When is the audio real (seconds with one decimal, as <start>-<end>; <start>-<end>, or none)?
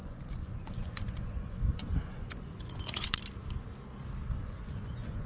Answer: 3.2-4.4